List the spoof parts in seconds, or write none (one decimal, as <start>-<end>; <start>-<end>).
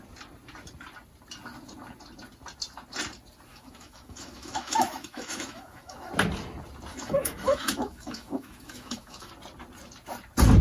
3.5-6.1; 6.9-9.3